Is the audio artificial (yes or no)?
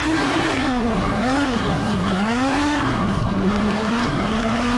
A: yes